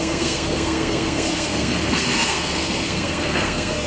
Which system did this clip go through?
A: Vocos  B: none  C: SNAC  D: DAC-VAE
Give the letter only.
C